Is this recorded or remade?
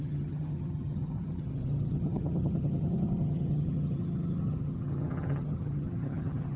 remade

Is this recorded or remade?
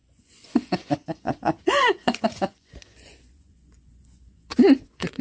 remade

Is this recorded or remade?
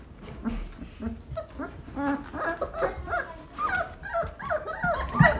recorded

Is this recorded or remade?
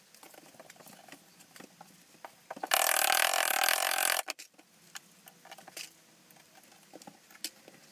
recorded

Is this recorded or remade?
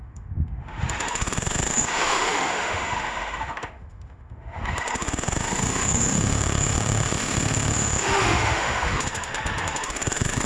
remade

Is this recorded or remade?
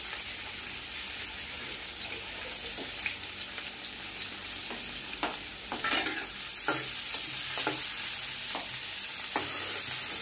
recorded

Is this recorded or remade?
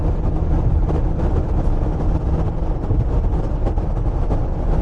recorded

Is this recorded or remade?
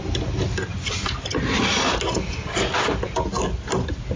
recorded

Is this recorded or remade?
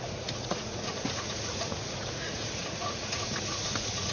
remade